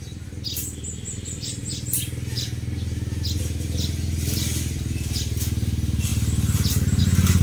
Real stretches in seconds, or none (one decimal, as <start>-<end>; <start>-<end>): 0.0-7.4